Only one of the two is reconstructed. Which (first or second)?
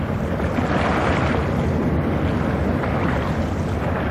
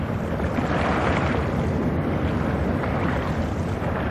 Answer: second